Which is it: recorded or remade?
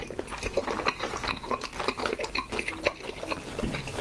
recorded